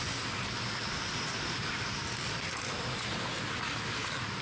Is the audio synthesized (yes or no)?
no